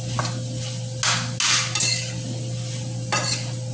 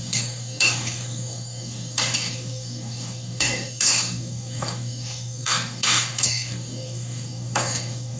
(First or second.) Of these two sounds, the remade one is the second